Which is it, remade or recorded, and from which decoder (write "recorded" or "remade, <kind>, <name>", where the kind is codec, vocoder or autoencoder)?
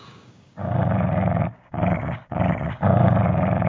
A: remade, codec, DAC